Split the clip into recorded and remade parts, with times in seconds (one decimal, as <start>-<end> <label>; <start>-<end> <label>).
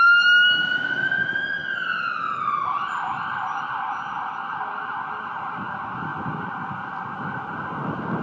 0.0-8.2 recorded